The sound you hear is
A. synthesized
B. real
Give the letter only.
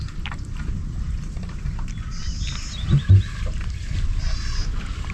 B